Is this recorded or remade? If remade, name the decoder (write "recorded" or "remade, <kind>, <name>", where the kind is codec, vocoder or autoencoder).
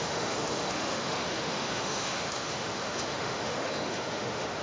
remade, autoencoder, DAC-VAE